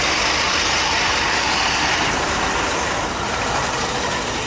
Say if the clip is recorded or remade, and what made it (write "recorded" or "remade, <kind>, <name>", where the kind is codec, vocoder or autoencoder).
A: recorded